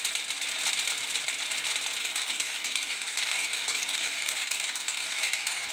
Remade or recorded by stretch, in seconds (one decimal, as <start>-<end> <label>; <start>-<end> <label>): 0.0-2.0 recorded; 2.0-5.7 remade